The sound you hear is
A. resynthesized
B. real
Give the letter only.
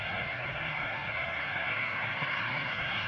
A